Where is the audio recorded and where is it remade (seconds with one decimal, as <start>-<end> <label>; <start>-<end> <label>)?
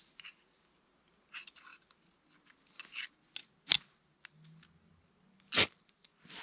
0.0-6.4 recorded